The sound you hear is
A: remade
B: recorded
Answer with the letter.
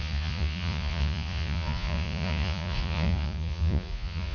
A